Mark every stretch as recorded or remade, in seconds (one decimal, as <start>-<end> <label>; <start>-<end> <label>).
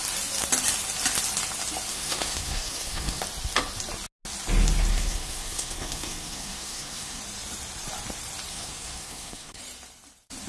0.0-1.9 recorded; 1.9-3.2 remade; 3.2-4.9 recorded; 4.9-7.2 remade; 7.2-8.5 recorded; 8.5-9.6 remade; 9.6-10.5 recorded